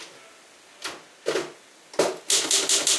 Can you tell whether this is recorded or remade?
recorded